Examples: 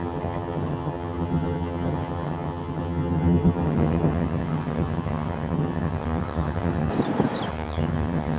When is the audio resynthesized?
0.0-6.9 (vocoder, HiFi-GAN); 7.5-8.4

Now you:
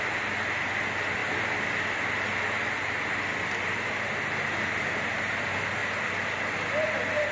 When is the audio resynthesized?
none

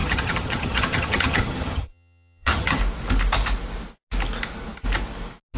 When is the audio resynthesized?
0.0-2.8 (vocoder, HiFi-GAN)

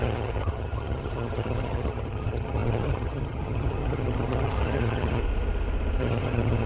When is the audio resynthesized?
0.0-5.2 (vocoder, HiFi-GAN); 6.0-6.7

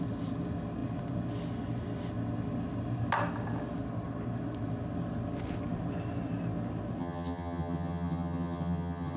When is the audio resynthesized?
7.0-9.2 (vocoder, HiFi-GAN)

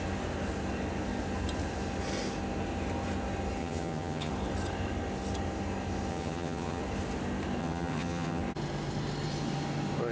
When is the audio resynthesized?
3.6-4.3 (vocoder, HiFi-GAN); 6.1-6.8; 7.6-8.4

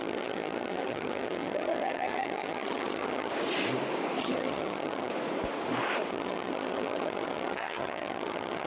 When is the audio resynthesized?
0.0-3.3 (vocoder, HiFi-GAN); 4.2-5.1; 6.1-8.7

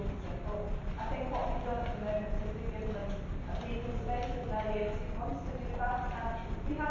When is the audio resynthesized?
none